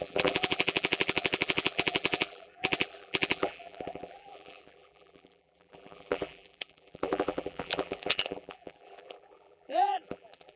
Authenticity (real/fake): fake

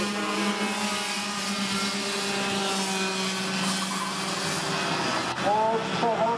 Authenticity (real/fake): real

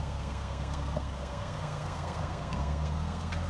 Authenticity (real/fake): fake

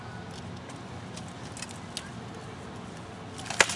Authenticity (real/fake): real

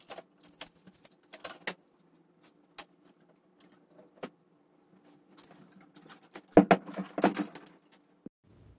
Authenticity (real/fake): real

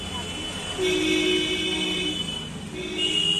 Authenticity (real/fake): real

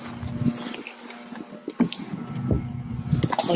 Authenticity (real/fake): real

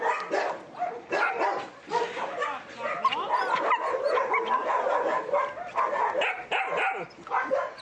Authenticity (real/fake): real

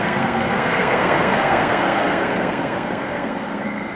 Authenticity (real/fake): fake